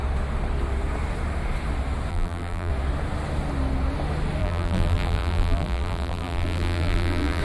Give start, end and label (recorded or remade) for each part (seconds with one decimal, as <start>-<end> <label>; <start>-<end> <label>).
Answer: 0.0-2.1 recorded; 2.1-2.7 remade; 2.7-4.4 recorded; 4.4-7.4 remade